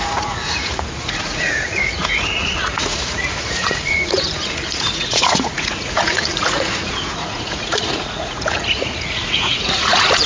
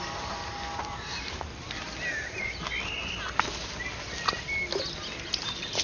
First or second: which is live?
second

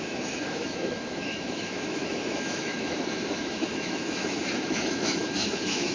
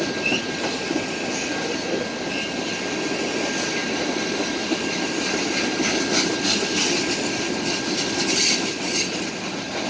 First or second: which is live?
second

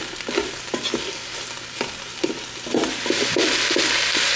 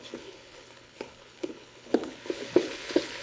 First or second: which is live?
first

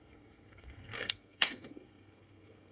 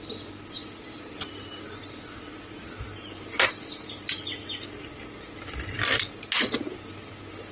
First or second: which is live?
second